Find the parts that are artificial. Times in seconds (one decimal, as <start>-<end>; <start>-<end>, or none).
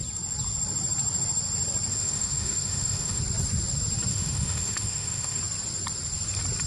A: 1.9-3.2; 4.1-5.4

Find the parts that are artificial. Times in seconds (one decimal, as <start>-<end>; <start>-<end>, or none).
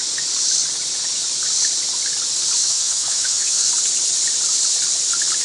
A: 2.6-3.7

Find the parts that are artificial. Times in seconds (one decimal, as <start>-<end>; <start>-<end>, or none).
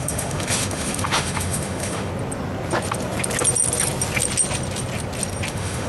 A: 0.0-2.1; 5.5-5.9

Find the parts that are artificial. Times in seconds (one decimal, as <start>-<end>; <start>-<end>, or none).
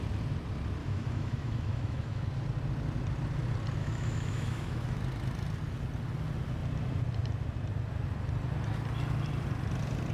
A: 0.8-2.2; 3.8-5.0